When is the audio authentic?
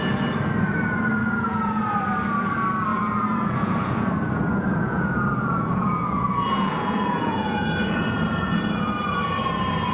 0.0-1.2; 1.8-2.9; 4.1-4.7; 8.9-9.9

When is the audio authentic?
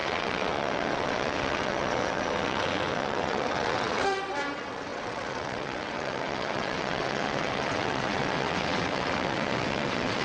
none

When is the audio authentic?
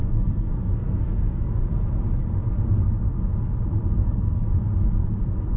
1.6-4.0; 4.5-5.6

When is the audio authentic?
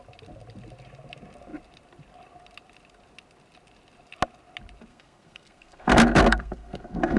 0.0-4.9